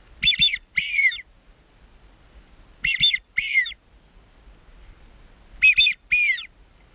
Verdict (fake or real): real